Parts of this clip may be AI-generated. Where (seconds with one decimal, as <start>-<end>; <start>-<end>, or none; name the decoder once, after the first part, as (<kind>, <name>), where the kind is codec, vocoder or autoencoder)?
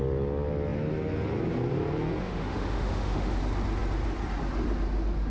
2.2-3.4 (autoencoder, DAC-VAE)